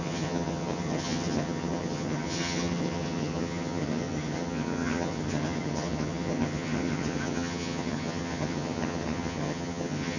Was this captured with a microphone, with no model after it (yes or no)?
no